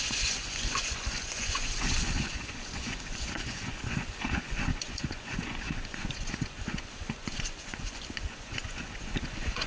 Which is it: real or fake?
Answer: fake